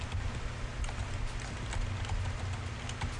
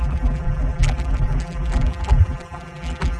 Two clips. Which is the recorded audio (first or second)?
first